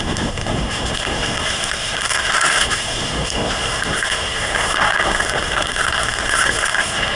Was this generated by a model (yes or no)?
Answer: yes